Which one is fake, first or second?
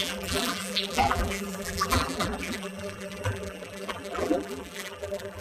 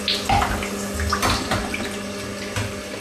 first